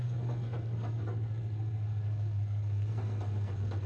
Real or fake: fake